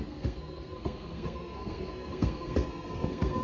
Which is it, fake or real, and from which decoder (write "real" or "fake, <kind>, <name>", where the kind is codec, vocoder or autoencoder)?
fake, codec, SNAC